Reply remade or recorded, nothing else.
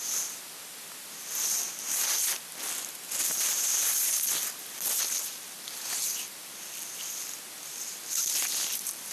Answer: recorded